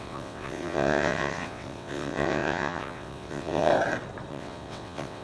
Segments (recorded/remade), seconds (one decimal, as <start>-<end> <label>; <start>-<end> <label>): 0.0-3.7 remade; 3.7-4.3 recorded; 4.3-5.2 remade